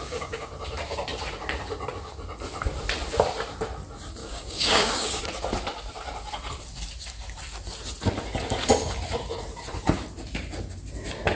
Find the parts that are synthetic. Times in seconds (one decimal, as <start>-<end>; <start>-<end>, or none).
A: 0.0-0.5; 4.2-5.2